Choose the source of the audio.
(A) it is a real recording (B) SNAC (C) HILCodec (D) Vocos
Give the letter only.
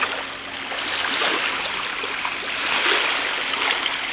A